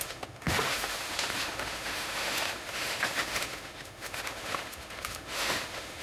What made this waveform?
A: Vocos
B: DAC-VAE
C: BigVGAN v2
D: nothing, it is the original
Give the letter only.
B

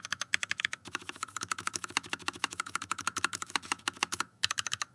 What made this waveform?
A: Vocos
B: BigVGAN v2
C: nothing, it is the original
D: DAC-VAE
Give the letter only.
D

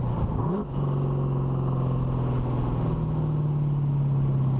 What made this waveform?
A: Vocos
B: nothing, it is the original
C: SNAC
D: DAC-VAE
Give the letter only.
B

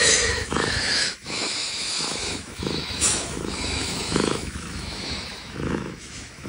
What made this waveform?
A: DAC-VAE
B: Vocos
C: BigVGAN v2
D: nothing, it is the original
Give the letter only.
A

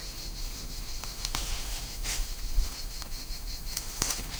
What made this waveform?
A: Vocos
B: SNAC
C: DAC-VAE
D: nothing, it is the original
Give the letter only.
C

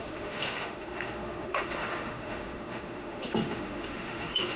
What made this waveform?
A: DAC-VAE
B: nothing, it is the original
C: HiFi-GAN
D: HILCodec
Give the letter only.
A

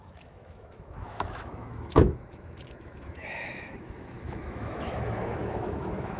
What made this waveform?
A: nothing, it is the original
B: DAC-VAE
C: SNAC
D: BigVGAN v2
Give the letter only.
B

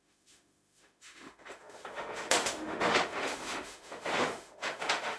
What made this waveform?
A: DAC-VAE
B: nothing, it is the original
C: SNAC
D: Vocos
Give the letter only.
A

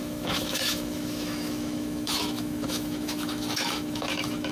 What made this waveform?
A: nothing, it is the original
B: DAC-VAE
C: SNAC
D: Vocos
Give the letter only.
B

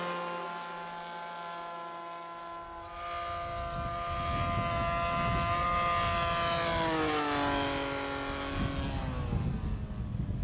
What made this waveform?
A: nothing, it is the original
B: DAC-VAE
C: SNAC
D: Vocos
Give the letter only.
A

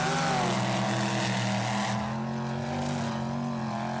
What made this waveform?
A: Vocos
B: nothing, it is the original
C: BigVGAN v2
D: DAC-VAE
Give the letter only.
B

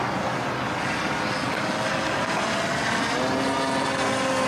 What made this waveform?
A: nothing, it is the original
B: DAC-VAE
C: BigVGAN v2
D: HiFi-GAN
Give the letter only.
A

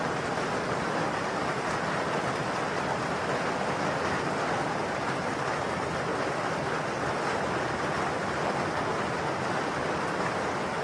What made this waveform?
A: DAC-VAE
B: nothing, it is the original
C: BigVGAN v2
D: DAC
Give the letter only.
B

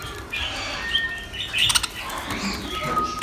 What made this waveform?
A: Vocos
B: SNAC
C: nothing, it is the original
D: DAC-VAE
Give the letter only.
C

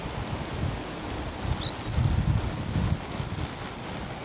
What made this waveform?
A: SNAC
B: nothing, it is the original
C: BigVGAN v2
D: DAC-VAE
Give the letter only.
B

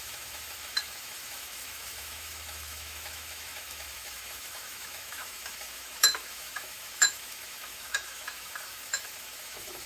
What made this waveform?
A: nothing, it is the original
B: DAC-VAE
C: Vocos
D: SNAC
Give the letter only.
B